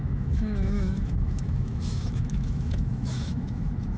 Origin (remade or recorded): remade